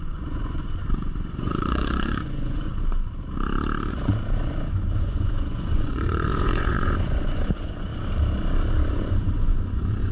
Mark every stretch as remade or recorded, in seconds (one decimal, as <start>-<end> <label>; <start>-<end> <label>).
0.0-2.7 remade; 2.7-3.9 recorded; 3.9-7.9 remade; 7.9-8.9 recorded; 8.9-10.1 remade